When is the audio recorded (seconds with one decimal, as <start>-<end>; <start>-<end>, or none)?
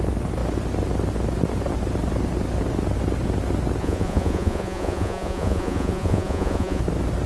0.0-3.8; 6.8-7.3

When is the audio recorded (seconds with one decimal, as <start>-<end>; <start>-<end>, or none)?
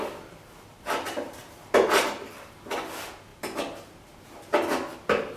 0.0-5.4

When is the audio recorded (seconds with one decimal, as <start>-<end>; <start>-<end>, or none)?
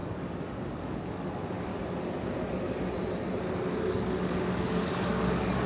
1.7-3.8